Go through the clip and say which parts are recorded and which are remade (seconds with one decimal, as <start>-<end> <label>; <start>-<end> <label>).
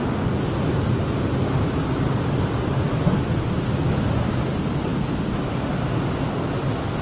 0.0-7.0 recorded